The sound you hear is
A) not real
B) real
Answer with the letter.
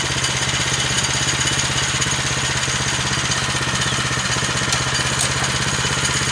B